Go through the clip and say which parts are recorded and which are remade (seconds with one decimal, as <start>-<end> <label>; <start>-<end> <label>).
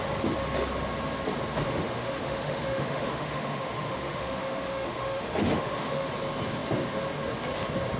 0.0-1.7 recorded; 1.7-6.1 remade; 6.1-8.0 recorded